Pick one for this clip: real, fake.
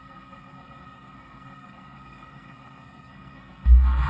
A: fake